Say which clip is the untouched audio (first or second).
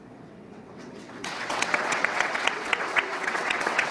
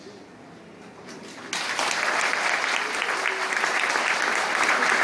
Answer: second